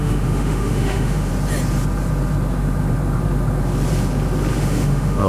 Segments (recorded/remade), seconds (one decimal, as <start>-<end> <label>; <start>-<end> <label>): 0.0-1.3 remade; 1.3-4.5 recorded; 4.5-5.3 remade